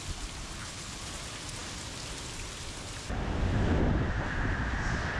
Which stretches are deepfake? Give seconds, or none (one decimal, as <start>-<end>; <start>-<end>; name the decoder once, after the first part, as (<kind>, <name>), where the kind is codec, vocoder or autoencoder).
0.6-1.1 (codec, HILCodec)